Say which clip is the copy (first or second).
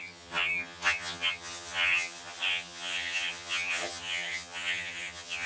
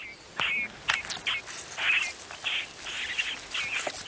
first